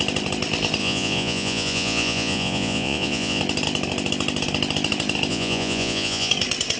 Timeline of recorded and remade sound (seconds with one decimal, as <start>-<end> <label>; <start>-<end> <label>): 0.0-0.8 recorded; 0.8-3.4 remade; 3.4-5.3 recorded; 5.3-6.3 remade; 6.3-6.8 recorded